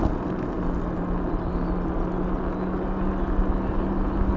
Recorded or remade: recorded